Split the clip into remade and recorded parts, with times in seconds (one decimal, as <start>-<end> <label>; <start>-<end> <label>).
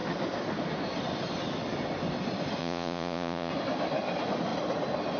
0.0-2.6 recorded; 2.6-3.5 remade; 3.5-5.2 recorded